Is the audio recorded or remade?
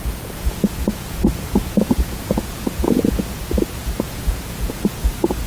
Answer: remade